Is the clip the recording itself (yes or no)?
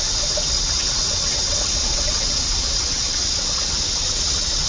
no